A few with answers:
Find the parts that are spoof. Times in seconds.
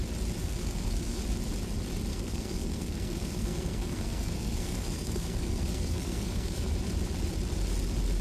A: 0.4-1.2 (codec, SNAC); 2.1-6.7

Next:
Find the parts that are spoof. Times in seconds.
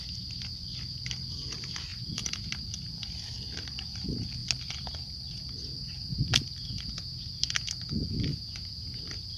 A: 1.9-2.5 (vocoder, Vocos); 6.6-7.1; 8.3-9.0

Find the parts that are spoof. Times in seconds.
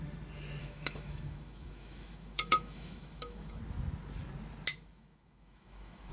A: 0.6-3.6 (autoencoder, DAC-VAE); 4.7-6.1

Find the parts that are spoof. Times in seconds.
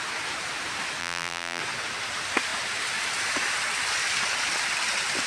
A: 1.0-1.6 (vocoder, BigVGAN v2)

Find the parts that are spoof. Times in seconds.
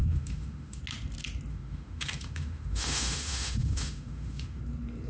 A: 0.0-0.8 (autoencoder, DAC-VAE); 1.5-4.6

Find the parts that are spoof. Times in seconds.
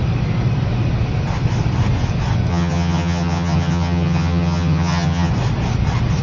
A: 2.5-5.3 (vocoder, HiFi-GAN)